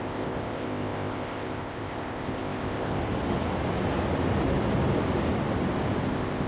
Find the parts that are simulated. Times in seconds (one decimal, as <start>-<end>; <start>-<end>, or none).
0.0-3.0; 6.1-6.5